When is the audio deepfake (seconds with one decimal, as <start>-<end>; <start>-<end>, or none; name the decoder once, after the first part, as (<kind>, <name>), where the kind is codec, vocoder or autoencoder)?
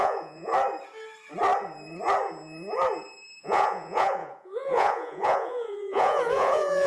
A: 0.0-0.5 (vocoder, Vocos); 3.4-6.9